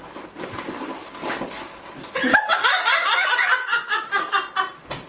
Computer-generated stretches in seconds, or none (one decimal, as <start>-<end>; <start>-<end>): 2.3-4.3